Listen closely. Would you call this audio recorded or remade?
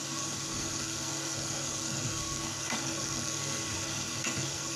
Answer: remade